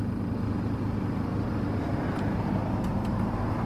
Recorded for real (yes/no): yes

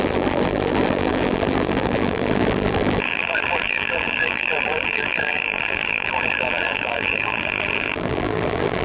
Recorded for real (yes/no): no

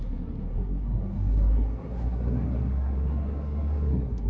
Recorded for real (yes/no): no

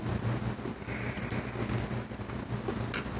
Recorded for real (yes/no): yes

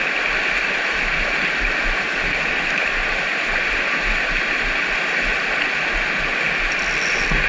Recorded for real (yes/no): yes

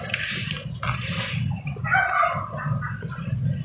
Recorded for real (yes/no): yes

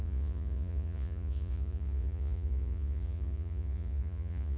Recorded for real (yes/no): no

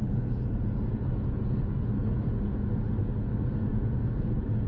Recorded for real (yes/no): no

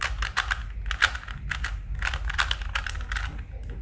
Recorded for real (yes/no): yes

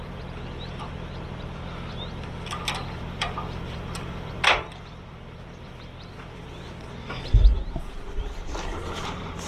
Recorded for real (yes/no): no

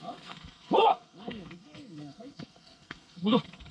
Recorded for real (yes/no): no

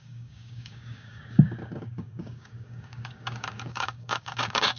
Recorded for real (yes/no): no